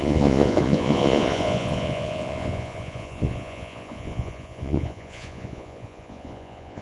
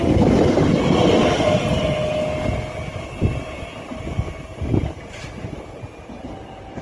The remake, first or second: first